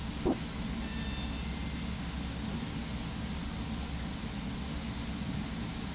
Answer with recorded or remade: recorded